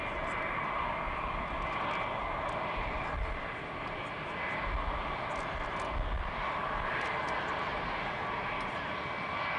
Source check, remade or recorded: recorded